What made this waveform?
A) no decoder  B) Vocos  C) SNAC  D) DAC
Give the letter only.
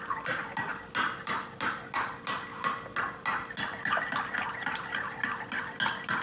A